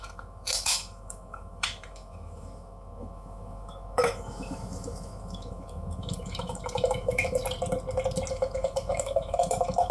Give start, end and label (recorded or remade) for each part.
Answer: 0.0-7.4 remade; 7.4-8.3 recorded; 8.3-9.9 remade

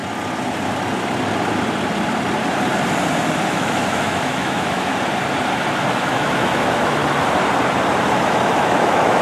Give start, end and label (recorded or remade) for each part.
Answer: 0.0-3.5 recorded; 3.5-4.9 remade; 4.9-5.8 recorded; 5.8-7.0 remade; 7.0-8.2 recorded; 8.2-9.2 remade

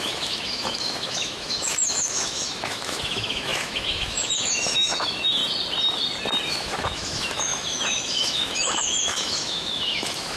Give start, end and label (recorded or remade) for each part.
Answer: 0.0-5.4 remade; 5.4-6.5 recorded; 6.5-10.4 remade

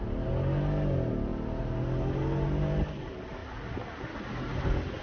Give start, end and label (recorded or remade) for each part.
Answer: 0.0-5.0 recorded

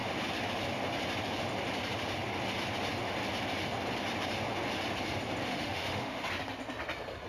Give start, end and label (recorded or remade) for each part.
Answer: 0.0-5.5 recorded; 5.5-6.3 remade; 6.3-7.3 recorded

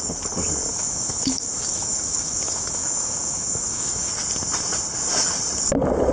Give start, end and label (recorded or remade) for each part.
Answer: 0.0-0.7 recorded; 0.7-4.1 remade; 4.1-6.1 recorded

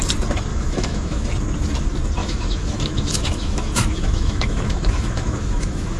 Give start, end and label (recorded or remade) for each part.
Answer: 0.0-0.5 recorded; 0.5-1.3 remade; 1.3-2.2 recorded; 2.2-6.0 remade

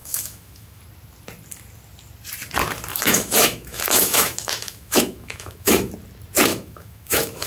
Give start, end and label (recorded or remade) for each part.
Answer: 0.0-0.8 remade; 0.8-2.9 recorded; 2.9-5.9 remade; 5.9-6.5 recorded; 6.5-7.5 remade